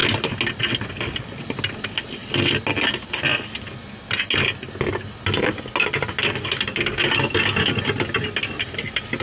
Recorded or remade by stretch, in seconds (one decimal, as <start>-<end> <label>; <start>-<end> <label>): 0.0-9.2 recorded